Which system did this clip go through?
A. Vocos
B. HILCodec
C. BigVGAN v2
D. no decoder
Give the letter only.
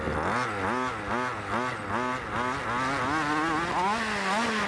D